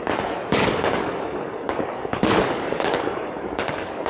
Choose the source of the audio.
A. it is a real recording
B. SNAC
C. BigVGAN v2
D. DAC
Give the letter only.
D